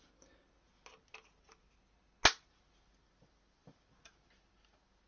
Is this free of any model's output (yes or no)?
yes